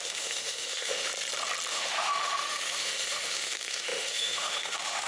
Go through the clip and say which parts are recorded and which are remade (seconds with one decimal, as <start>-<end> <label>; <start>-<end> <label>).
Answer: 0.0-1.1 remade; 1.1-1.7 recorded; 1.7-5.1 remade